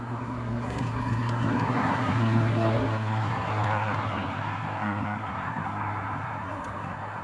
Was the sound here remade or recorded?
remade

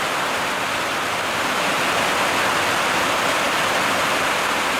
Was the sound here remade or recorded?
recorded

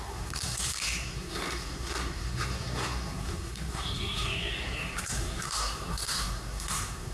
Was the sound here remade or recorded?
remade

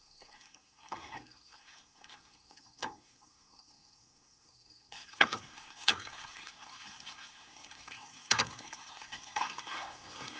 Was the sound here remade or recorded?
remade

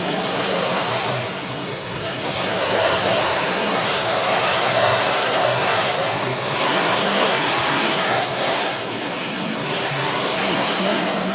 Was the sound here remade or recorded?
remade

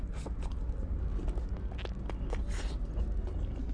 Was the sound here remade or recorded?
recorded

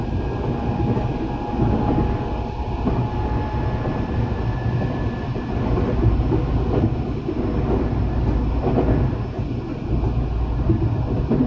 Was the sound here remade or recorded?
recorded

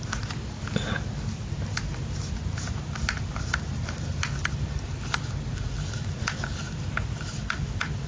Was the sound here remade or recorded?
recorded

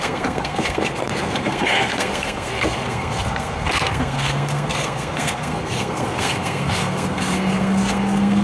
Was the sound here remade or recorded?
remade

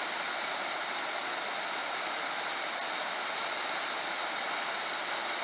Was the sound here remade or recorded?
recorded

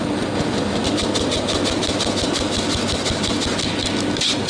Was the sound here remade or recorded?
recorded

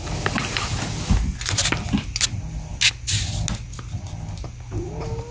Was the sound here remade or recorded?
recorded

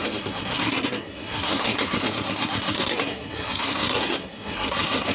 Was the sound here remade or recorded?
remade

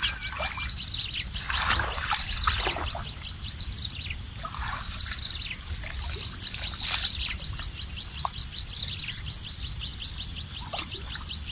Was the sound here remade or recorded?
recorded